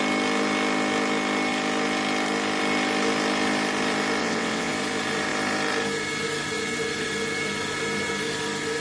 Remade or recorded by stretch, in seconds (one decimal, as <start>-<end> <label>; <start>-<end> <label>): 0.0-4.2 recorded; 4.2-4.7 remade; 4.7-8.8 recorded